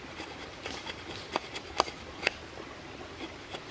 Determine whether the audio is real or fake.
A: real